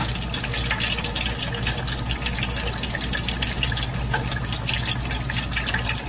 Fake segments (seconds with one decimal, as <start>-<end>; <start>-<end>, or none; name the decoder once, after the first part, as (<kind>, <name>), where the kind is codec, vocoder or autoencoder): none